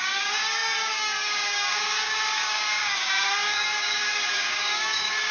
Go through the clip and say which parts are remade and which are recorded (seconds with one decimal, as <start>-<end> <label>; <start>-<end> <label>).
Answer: 0.0-5.3 remade